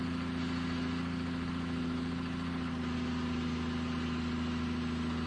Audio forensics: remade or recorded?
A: recorded